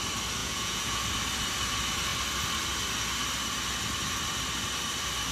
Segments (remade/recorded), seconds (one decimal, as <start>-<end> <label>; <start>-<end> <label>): 0.0-0.4 recorded; 0.4-1.0 remade; 1.0-5.3 recorded